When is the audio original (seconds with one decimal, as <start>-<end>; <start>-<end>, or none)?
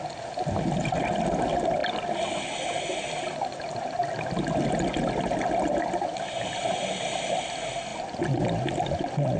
0.0-9.4